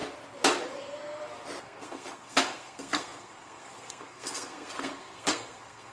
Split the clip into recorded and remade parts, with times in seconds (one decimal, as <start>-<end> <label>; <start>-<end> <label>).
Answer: 0.0-1.6 recorded; 1.6-5.9 remade